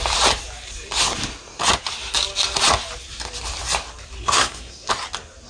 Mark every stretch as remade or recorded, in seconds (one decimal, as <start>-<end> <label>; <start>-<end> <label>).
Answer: 0.0-4.2 recorded; 4.2-4.9 remade; 4.9-5.5 recorded